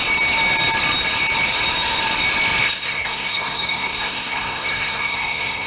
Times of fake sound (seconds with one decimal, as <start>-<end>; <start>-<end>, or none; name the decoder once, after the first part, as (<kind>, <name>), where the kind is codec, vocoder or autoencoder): 2.6-5.7 (codec, SNAC)